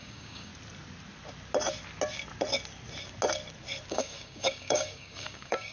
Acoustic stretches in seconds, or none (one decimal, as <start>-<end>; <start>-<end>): 0.5-3.9